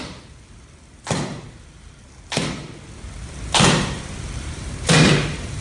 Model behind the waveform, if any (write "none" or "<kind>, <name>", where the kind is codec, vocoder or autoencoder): vocoder, BigVGAN v2